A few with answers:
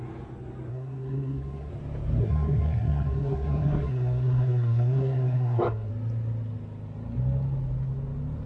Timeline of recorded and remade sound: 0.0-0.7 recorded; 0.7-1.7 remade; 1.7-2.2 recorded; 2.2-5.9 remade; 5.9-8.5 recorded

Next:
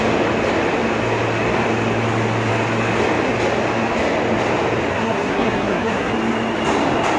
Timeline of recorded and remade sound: 0.0-4.9 recorded; 4.9-6.1 remade; 6.1-7.2 recorded

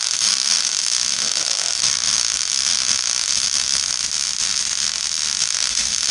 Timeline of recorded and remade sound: 0.0-3.8 remade; 3.8-5.4 recorded; 5.4-6.1 remade

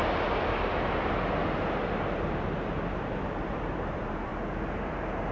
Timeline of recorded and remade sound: 0.0-3.2 recorded; 3.2-4.3 remade; 4.3-5.3 recorded

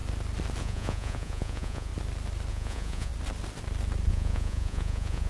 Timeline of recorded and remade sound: 0.0-0.6 recorded; 0.6-1.9 remade; 1.9-2.5 recorded; 2.5-3.1 remade; 3.1-4.1 recorded; 4.1-5.3 remade